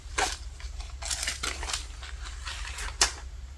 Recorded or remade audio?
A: recorded